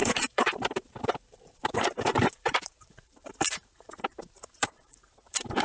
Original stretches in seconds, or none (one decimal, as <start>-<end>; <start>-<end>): none

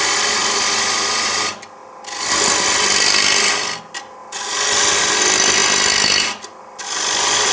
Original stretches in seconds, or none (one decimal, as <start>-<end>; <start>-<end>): 0.0-7.5

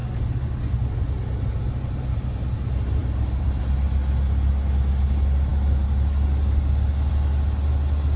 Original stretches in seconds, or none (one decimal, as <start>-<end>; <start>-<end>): 0.0-3.0; 3.6-8.2